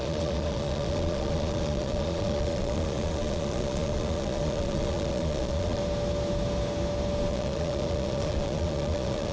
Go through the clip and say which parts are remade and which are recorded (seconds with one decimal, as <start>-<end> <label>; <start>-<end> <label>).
0.0-5.8 remade; 5.8-7.3 recorded; 7.3-9.3 remade